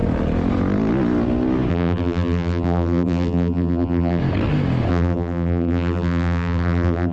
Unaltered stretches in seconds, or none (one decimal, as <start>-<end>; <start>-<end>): 0.0-1.7; 4.2-4.9